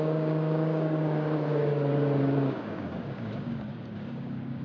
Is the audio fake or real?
fake